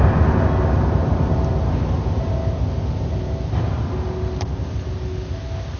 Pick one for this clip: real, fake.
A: real